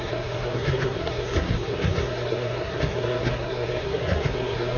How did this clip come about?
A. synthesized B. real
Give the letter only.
A